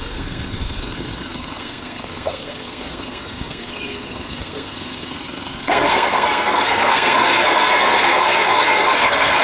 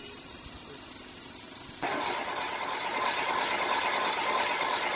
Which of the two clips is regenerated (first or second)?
first